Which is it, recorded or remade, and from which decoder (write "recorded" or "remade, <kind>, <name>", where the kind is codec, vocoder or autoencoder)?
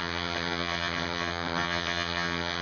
remade, vocoder, HiFi-GAN